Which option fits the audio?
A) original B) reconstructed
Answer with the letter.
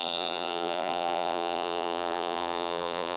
B